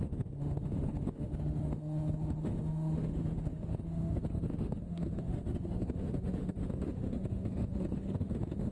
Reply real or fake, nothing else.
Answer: fake